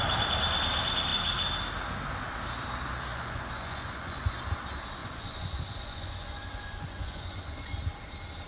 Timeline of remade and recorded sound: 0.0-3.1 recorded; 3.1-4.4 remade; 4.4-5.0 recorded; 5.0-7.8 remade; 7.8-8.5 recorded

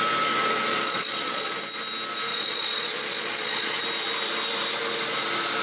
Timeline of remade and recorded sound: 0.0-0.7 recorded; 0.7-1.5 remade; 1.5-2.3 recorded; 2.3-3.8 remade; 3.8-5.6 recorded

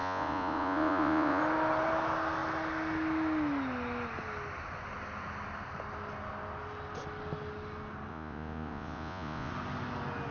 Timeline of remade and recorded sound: 0.0-1.4 remade; 1.4-8.1 recorded; 8.1-9.5 remade; 9.5-10.3 recorded

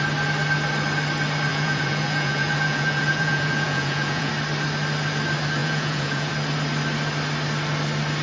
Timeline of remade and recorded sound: 0.0-1.5 recorded; 1.5-4.3 remade; 4.3-5.6 recorded; 5.6-6.3 remade; 6.3-8.2 recorded

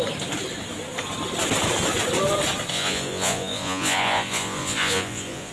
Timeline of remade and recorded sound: 0.0-2.7 recorded; 2.7-5.5 remade

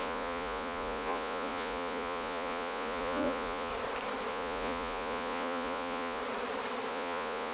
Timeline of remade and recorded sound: 0.0-3.7 remade; 3.7-4.3 recorded; 4.3-6.2 remade; 6.2-6.9 recorded; 6.9-7.5 remade